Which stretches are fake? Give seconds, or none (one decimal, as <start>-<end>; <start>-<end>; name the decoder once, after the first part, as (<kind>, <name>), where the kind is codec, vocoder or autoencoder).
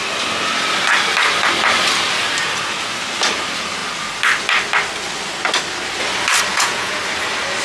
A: 6.5-7.0 (vocoder, Vocos)